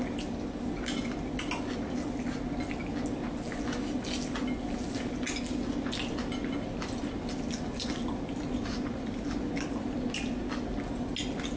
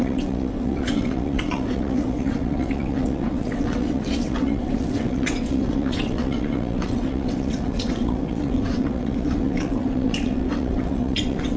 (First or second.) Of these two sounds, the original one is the first